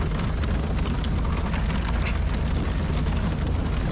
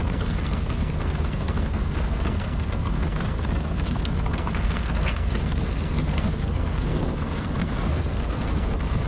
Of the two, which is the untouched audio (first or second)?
first